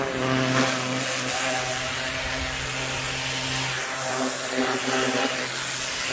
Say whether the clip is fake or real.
real